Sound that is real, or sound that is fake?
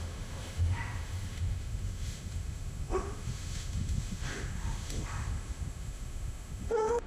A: fake